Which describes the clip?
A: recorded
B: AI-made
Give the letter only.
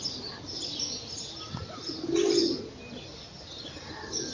A